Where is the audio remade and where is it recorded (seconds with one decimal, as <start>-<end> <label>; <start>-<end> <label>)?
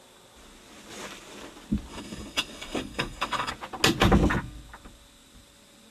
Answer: 0.0-1.9 recorded; 1.9-3.5 remade; 3.5-5.9 recorded